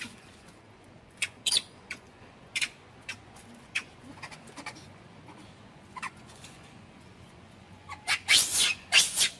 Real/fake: fake